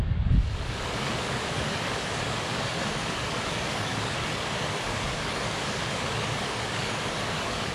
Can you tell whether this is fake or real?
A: fake